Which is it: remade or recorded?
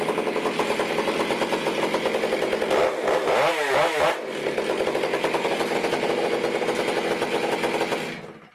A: recorded